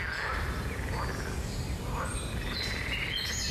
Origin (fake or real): real